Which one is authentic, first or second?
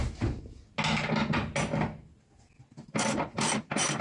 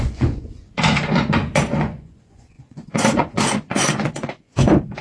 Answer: first